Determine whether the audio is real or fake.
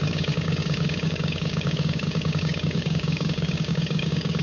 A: fake